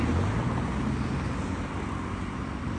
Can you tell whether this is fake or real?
real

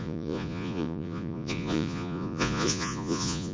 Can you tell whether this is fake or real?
fake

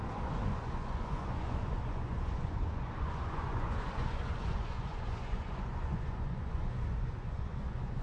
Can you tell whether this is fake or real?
fake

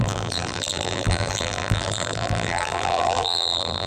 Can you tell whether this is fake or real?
fake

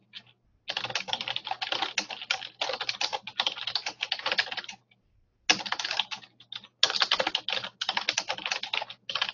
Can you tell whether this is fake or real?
real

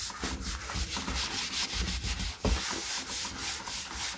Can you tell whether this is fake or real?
real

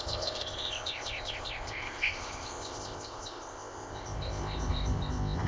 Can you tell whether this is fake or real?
fake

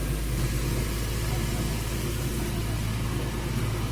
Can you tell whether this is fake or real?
real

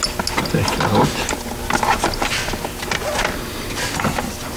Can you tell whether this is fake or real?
real